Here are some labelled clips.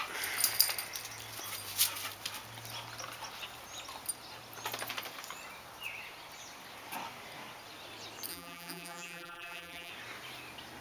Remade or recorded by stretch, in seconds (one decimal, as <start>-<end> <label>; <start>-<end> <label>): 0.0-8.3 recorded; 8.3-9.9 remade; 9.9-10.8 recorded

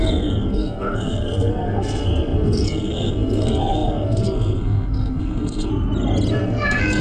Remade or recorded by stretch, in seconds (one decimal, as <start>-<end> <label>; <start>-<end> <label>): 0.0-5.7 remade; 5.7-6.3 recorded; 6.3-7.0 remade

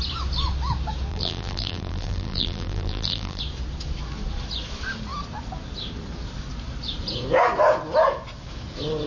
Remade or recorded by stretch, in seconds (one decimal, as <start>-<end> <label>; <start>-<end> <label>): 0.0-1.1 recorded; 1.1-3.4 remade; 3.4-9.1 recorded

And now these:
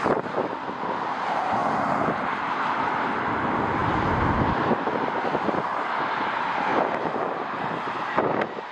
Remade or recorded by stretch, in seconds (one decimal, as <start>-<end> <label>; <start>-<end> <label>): 0.0-6.7 recorded; 6.7-7.2 remade; 7.2-8.7 recorded